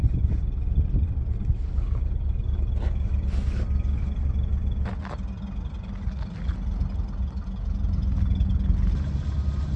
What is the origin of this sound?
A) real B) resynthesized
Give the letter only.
A